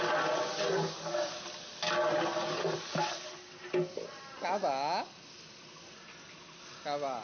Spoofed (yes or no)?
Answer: no